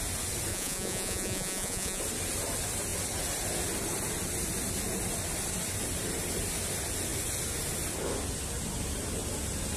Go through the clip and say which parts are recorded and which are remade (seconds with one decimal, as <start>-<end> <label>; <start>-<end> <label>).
0.0-0.5 recorded; 0.5-2.0 remade; 2.0-9.8 recorded